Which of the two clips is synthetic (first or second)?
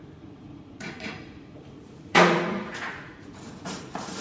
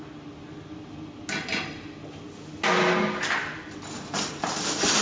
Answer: first